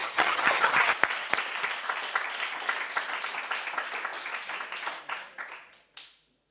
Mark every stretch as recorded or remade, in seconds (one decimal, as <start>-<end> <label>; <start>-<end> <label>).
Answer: 0.0-0.9 remade; 0.9-6.5 recorded